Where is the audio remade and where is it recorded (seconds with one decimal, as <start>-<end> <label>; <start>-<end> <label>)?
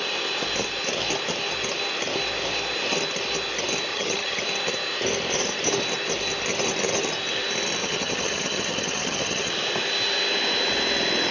0.0-3.9 recorded; 3.9-4.4 remade; 4.4-7.8 recorded; 7.8-9.5 remade; 9.5-11.3 recorded